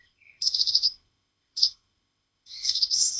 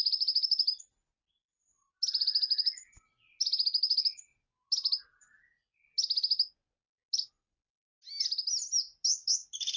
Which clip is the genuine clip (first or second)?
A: second